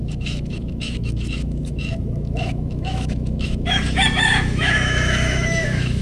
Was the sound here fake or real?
fake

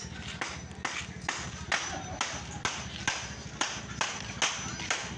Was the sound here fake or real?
real